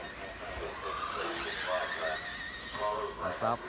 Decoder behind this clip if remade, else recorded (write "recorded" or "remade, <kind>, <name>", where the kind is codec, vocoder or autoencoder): recorded